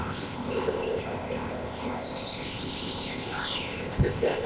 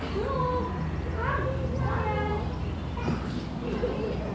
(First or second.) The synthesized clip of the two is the first